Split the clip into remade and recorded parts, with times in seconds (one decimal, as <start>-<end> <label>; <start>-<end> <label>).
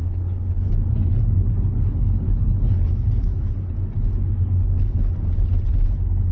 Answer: 0.0-0.7 remade; 0.7-1.4 recorded; 1.4-3.7 remade; 3.7-4.6 recorded; 4.6-5.1 remade; 5.1-6.3 recorded